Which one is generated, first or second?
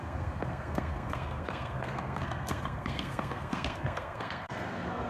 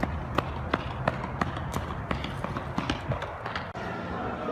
first